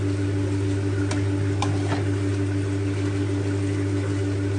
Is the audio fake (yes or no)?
no